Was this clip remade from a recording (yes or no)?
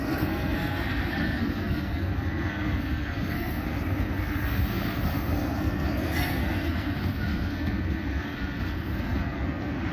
yes